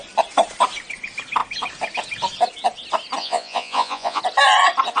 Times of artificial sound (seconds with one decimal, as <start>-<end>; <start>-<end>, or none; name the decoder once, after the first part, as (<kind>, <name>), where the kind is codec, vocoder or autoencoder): 3.2-4.2 (vocoder, Vocos)